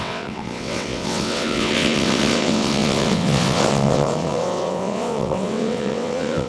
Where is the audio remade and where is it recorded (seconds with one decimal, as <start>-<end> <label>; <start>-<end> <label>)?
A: 0.0-6.5 remade